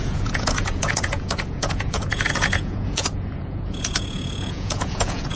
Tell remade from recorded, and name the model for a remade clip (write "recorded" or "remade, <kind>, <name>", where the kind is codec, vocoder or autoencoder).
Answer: remade, vocoder, Vocos